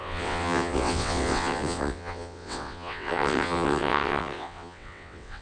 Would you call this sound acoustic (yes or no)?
no